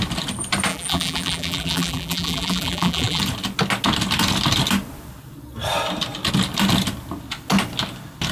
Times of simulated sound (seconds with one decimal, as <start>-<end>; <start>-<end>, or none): 0.7-3.2